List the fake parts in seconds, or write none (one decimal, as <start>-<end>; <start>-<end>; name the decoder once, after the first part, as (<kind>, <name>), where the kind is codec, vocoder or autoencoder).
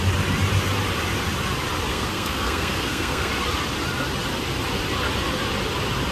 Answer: 1.9-3.3 (codec, SNAC)